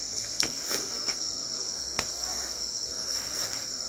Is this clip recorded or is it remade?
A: remade